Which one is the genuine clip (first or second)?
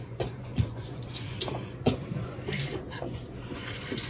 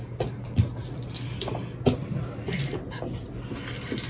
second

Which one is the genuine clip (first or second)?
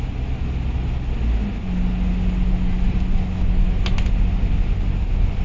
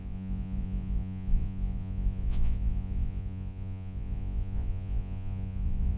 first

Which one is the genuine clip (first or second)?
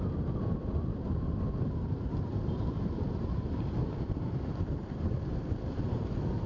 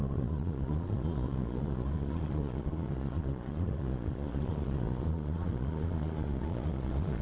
first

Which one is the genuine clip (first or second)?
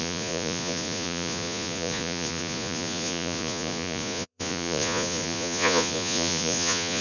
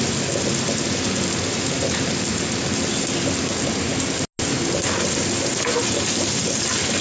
second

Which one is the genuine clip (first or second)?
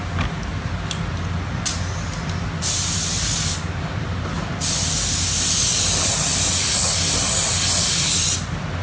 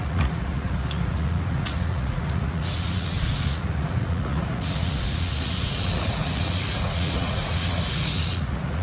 first